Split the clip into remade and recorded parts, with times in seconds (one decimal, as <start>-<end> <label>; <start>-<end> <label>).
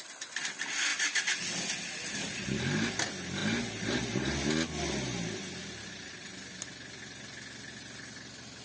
0.0-8.6 recorded